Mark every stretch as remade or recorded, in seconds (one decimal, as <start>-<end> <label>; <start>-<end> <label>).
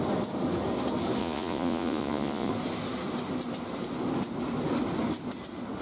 0.0-1.2 recorded; 1.2-2.5 remade; 2.5-5.8 recorded